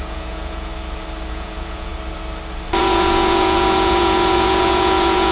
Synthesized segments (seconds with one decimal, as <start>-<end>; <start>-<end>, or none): 0.0-0.7; 1.3-1.9; 2.8-5.3